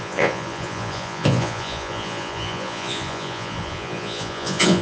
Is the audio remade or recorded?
remade